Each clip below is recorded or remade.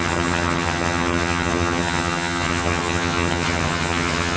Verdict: remade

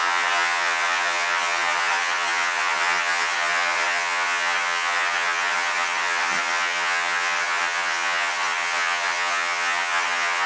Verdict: remade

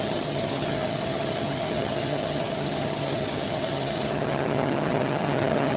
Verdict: remade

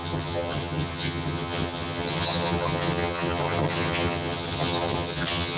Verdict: remade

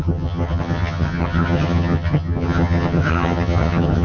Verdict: remade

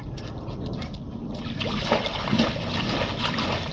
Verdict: recorded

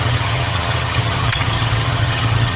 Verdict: remade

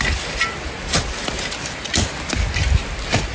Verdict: recorded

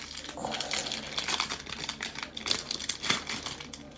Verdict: recorded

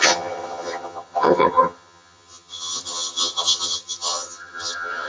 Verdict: remade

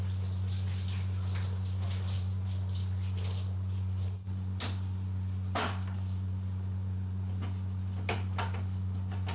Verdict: recorded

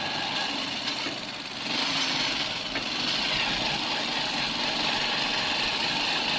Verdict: recorded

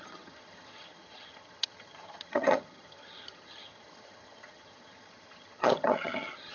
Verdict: remade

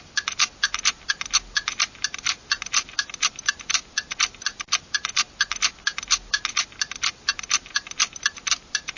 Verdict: recorded